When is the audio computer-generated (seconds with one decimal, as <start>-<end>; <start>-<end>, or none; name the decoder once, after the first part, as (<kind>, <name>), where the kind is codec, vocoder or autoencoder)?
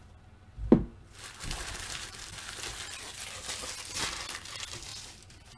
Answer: 0.9-2.2 (vocoder, BigVGAN v2); 4.9-5.6